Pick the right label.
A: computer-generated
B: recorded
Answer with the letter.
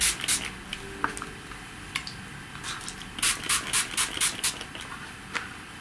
B